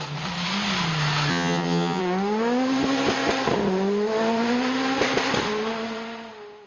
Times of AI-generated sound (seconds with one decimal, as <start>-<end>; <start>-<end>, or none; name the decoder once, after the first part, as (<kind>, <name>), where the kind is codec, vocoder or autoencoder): 1.3-2.0 (vocoder, HiFi-GAN)